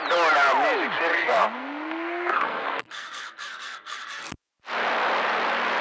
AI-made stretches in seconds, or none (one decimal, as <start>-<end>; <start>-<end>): 1.1-4.5